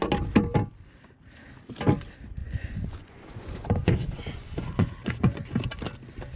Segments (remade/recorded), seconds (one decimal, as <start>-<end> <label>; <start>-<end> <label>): 0.0-2.4 recorded; 2.4-5.5 remade; 5.5-6.4 recorded